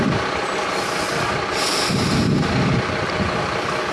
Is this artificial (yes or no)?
no